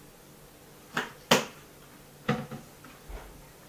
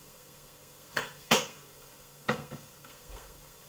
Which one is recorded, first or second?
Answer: first